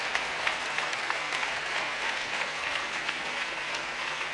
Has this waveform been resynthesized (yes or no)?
yes